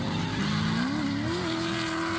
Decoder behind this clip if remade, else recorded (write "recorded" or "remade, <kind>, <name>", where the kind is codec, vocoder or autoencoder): recorded